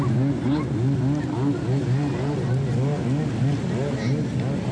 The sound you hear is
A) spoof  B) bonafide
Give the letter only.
B